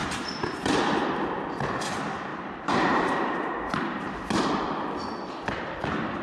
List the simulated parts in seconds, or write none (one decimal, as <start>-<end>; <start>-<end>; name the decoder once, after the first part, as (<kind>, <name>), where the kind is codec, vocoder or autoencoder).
0.0-1.1 (vocoder, BigVGAN v2); 2.3-4.5